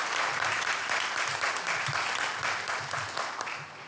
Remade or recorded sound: recorded